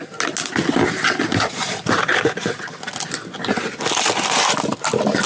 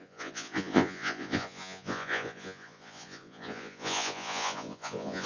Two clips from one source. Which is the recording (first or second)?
first